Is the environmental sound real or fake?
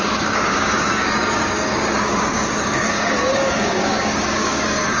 fake